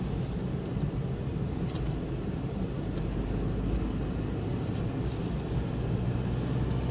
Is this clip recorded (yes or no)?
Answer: yes